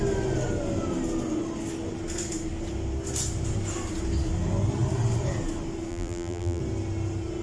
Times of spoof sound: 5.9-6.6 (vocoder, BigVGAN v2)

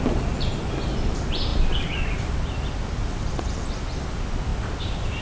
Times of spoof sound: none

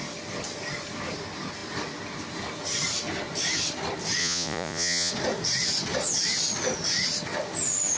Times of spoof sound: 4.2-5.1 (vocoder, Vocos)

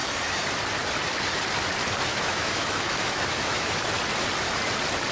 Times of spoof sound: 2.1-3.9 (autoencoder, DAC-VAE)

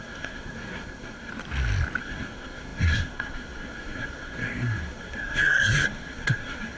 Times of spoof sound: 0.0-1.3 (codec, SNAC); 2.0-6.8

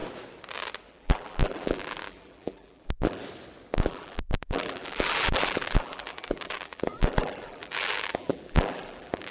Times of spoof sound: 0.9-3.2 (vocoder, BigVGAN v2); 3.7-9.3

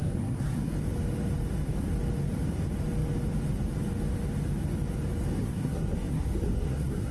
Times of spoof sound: 0.0-0.7 (codec, SNAC); 5.4-7.1